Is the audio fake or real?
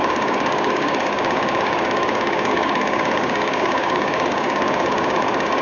fake